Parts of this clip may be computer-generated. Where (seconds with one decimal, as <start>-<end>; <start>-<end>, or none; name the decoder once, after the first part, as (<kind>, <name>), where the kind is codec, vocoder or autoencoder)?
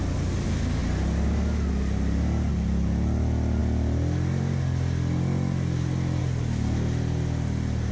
none